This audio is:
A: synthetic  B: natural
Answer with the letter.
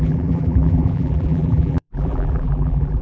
A